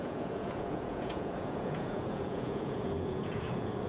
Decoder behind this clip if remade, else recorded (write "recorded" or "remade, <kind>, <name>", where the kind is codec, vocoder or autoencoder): remade, vocoder, Vocos